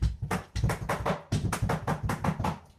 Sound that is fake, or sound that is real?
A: real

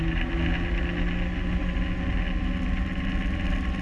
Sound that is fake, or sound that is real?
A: real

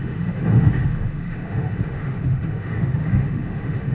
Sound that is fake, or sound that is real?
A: fake